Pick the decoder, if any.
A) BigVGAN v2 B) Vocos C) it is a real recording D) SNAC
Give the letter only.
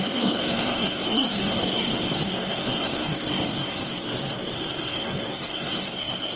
D